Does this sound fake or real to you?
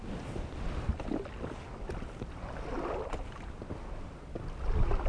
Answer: real